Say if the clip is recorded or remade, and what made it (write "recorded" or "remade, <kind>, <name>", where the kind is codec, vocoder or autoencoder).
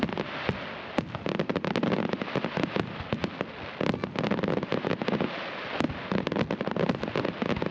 recorded